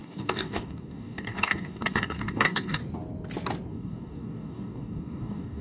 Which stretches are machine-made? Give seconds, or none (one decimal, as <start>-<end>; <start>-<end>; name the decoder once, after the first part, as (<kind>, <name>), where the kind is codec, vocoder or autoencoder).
0.0-2.8 (codec, DAC); 3.7-5.6